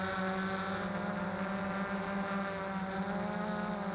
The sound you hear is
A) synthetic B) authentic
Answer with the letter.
B